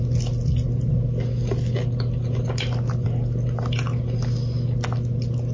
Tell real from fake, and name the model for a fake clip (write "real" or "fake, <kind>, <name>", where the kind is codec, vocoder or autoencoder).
real